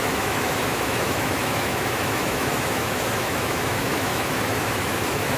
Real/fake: fake